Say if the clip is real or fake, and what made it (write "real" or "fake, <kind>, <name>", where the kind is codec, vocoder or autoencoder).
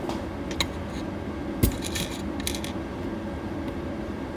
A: real